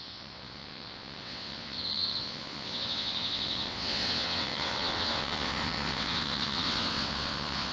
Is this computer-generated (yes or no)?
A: yes